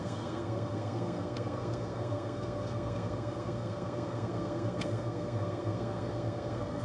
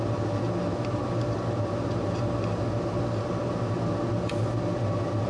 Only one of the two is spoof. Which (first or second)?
first